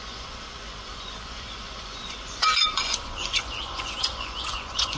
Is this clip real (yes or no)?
no